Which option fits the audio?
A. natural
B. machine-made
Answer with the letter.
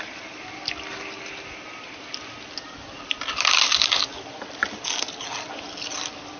A